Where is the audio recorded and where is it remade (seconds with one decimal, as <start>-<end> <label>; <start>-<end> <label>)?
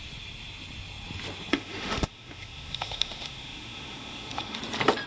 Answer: 0.0-1.5 recorded; 1.5-4.6 remade; 4.6-5.1 recorded